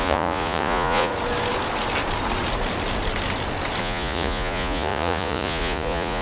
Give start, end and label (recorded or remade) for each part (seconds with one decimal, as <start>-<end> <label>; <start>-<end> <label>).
0.0-1.1 remade; 1.1-3.8 recorded; 3.8-6.2 remade